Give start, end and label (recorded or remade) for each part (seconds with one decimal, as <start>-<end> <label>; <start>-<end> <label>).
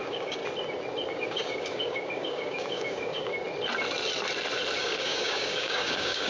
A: 0.0-0.4 remade; 0.4-1.1 recorded; 1.1-3.3 remade; 3.3-4.8 recorded; 4.8-6.3 remade